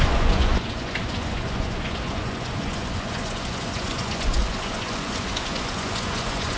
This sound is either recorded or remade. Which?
remade